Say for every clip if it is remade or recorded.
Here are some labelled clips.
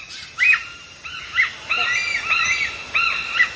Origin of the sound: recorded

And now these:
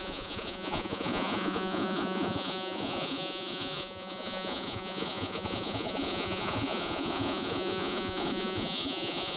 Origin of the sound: remade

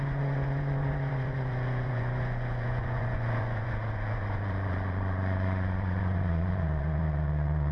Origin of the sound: remade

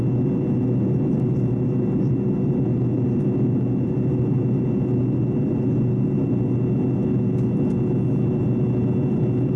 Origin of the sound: recorded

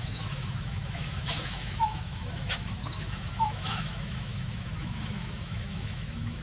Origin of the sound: remade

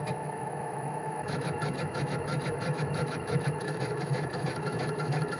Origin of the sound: remade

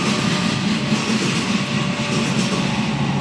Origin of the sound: recorded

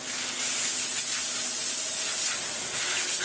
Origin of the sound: recorded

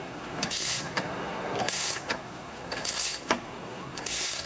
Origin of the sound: remade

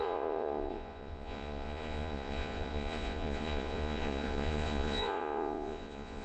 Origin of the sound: remade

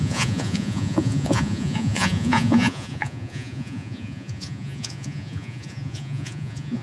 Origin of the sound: remade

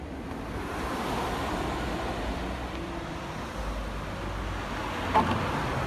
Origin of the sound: recorded